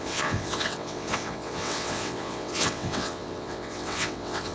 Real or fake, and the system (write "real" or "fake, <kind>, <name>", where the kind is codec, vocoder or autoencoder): fake, vocoder, WaveNeXt